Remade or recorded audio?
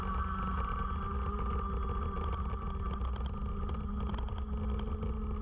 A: recorded